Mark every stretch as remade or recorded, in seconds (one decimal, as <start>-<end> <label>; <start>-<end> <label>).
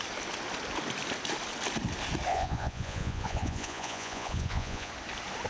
0.0-2.3 recorded; 2.3-4.9 remade; 4.9-5.5 recorded